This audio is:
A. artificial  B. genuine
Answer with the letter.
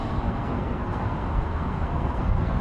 A